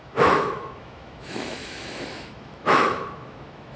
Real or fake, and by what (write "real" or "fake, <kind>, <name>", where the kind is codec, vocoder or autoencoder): fake, autoencoder, DAC-VAE